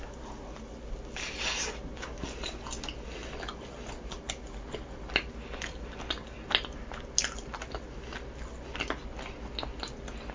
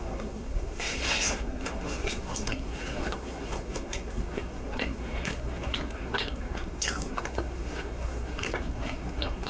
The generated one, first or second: second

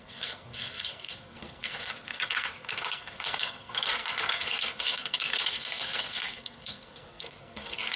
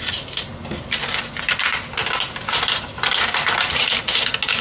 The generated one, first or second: first